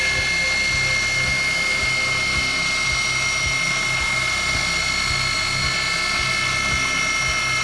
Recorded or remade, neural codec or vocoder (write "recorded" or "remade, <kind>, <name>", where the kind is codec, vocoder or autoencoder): recorded